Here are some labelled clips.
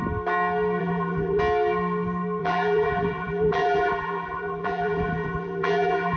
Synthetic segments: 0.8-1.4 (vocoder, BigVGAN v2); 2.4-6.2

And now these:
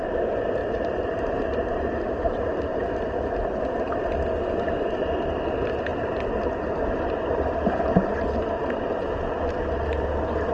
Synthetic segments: 0.6-3.6 (vocoder, BigVGAN v2); 5.9-8.4

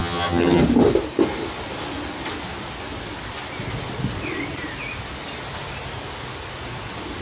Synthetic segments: 0.0-0.6 (vocoder, HiFi-GAN)

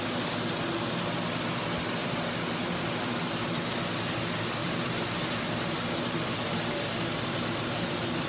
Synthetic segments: 2.0-3.7 (vocoder, BigVGAN v2); 4.6-8.3

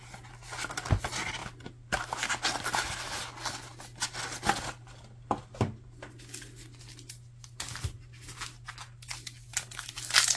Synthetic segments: none

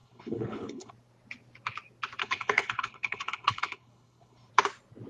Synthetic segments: 0.0-0.9 (codec, HILCodec); 2.2-4.5

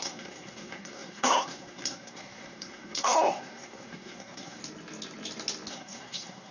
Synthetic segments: 0.0-4.6 (codec, SNAC); 5.7-6.5